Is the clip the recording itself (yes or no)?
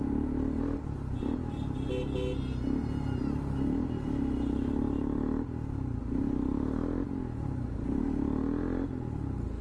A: yes